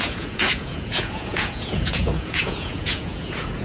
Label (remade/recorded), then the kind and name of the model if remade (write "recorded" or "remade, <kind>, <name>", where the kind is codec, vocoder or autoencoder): remade, vocoder, Vocos